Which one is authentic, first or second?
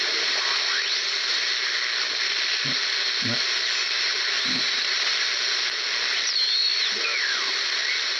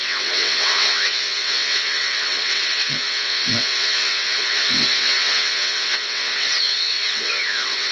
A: first